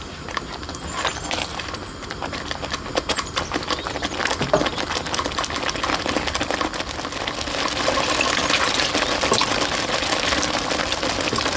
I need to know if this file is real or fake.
real